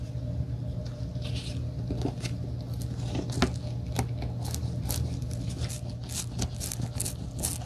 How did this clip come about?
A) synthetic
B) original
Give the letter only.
B